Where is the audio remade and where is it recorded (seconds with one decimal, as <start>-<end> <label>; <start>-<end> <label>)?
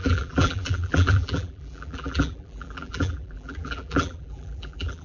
0.0-5.0 remade